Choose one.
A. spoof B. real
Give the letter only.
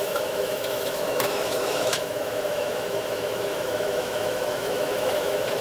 A